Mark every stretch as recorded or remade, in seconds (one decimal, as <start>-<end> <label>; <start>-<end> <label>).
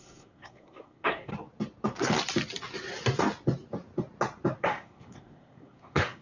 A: 0.0-1.3 remade; 1.3-4.6 recorded; 4.6-6.2 remade